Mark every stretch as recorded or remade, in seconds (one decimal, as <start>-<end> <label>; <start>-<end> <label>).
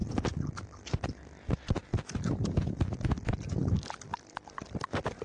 0.0-5.2 recorded